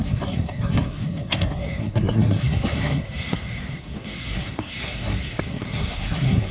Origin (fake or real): fake